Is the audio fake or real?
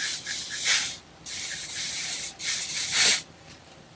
real